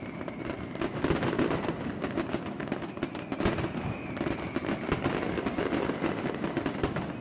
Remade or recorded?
recorded